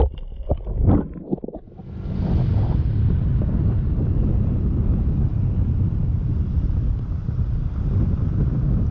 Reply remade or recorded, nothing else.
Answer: recorded